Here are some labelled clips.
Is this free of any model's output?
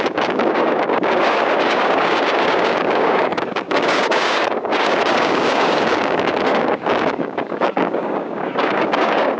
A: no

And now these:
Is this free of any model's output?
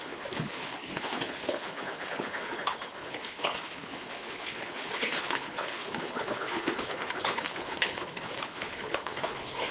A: no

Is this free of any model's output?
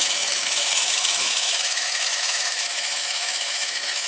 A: no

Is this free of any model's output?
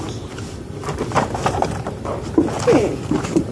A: no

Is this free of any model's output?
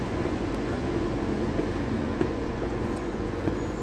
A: no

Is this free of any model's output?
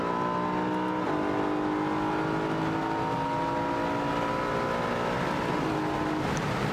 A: yes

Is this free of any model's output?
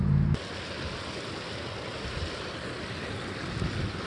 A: yes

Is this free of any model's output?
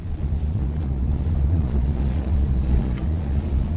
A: no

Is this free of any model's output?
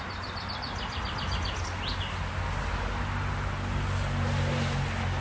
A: yes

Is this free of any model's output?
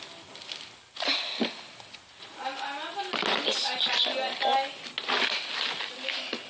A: yes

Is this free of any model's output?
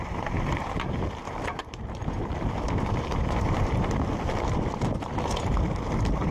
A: no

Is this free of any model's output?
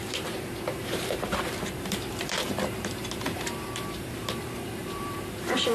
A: no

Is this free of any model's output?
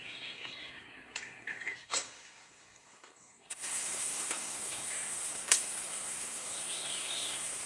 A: no